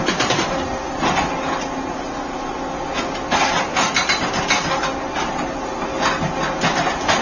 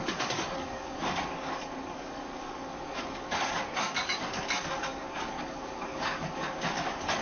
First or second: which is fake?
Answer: second